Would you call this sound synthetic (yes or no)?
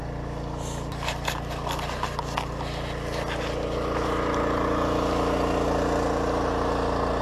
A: no